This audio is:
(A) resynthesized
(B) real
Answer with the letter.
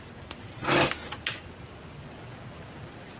B